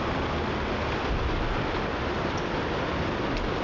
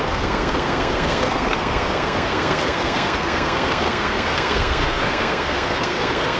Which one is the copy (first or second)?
second